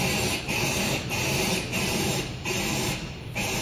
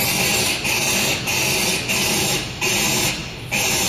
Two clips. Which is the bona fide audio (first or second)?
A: second